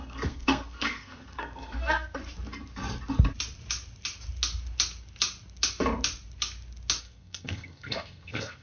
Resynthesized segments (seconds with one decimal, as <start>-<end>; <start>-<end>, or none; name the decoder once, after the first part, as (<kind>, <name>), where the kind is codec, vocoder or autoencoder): 0.0-2.2 (codec, SNAC); 7.0-8.6